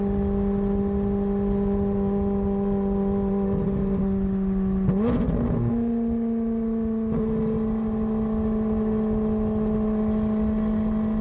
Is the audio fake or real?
real